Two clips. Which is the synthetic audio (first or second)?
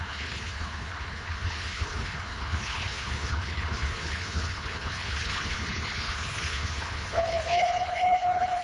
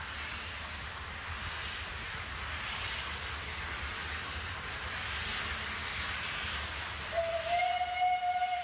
first